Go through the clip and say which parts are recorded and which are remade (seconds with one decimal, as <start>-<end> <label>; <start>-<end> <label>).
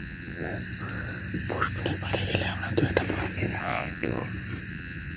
0.0-0.5 remade; 0.5-3.6 recorded; 3.6-4.2 remade; 4.2-4.7 recorded; 4.7-5.2 remade